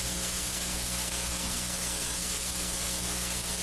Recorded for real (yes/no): no